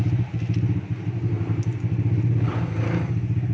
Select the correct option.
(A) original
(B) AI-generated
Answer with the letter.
A